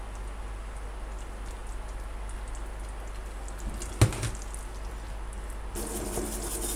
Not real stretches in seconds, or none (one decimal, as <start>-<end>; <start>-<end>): none